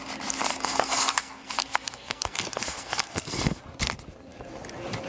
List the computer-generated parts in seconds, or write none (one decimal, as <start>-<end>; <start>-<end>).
0.5-3.6